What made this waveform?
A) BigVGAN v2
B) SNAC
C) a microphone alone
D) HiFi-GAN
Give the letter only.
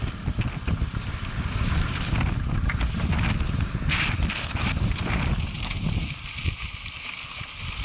C